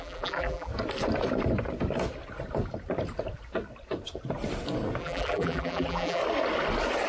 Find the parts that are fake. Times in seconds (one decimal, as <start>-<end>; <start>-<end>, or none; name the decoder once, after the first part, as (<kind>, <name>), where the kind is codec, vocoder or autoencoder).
0.0-0.7 (vocoder, BigVGAN v2); 5.0-6.2